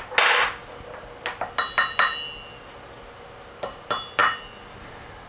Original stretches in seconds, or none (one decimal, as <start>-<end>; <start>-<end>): 0.0-5.3

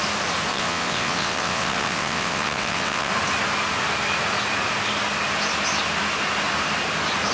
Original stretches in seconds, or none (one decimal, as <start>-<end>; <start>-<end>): 0.0-0.5; 3.1-7.3

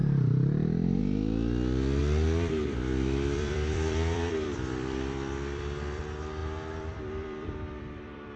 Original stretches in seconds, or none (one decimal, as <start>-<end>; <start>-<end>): 1.0-2.0; 6.0-6.4

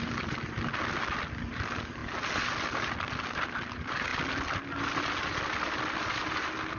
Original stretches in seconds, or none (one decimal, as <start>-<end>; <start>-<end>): 0.0-6.8

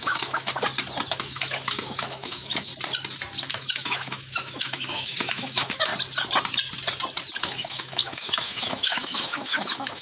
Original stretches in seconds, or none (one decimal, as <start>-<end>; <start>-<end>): 0.5-1.1; 2.7-3.4; 5.9-7.4